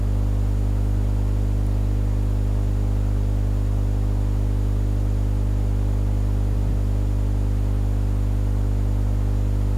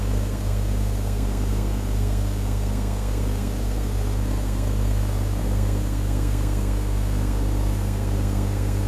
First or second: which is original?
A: first